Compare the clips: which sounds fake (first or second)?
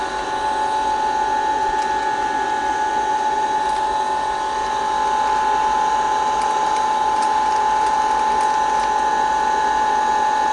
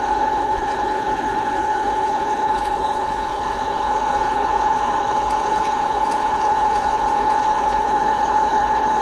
second